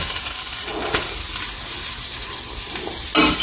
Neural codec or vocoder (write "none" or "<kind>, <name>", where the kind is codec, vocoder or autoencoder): none